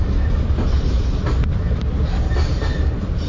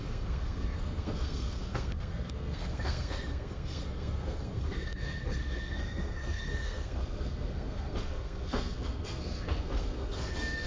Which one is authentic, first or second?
first